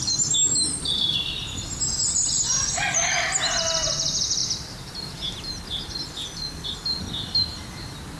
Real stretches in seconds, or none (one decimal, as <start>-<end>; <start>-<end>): 0.0-8.2